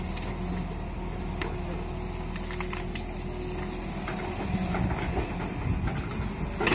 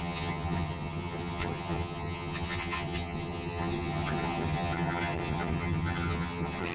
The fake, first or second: second